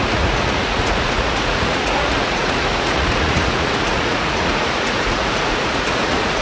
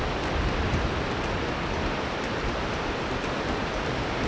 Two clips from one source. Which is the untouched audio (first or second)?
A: second